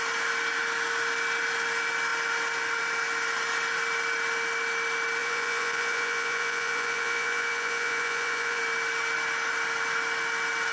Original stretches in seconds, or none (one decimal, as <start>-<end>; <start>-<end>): 0.0-5.2; 8.6-10.7